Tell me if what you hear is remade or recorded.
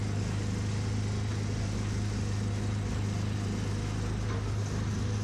recorded